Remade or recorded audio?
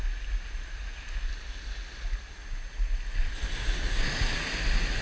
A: recorded